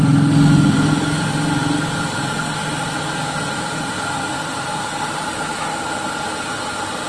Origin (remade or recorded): recorded